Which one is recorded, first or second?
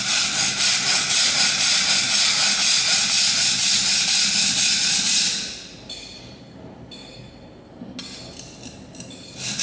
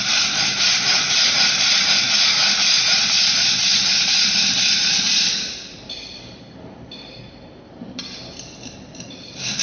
first